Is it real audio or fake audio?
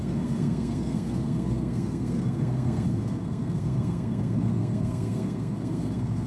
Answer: fake